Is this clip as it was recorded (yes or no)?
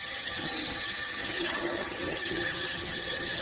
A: no